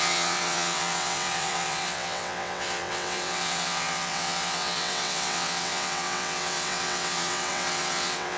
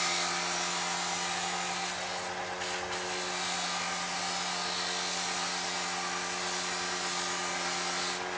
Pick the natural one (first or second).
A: second